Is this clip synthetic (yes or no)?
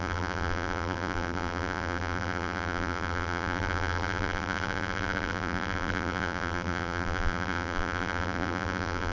yes